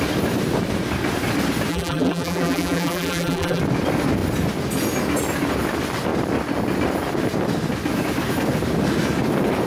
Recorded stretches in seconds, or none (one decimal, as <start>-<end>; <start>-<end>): 0.0-1.7; 3.6-9.7